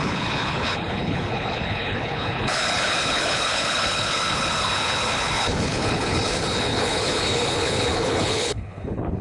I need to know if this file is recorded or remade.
remade